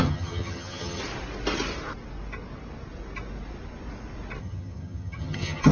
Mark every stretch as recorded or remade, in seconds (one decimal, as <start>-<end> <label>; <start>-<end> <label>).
0.0-1.0 remade; 1.0-4.4 recorded; 4.4-5.7 remade